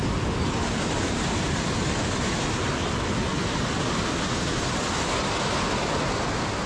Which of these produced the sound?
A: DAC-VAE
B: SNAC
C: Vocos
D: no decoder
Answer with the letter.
D